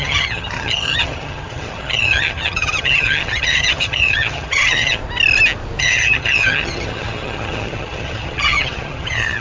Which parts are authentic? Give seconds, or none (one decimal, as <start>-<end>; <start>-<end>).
5.0-5.8